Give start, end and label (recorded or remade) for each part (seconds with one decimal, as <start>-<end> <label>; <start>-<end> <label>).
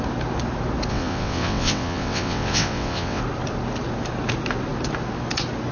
0.0-0.9 recorded; 0.9-3.2 remade; 3.2-5.7 recorded